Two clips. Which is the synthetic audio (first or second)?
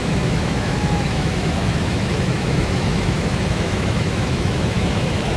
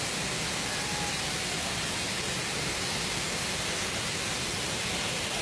first